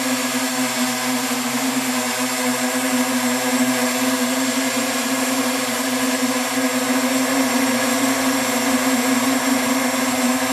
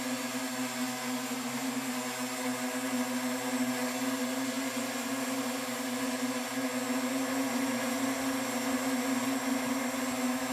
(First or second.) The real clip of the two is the second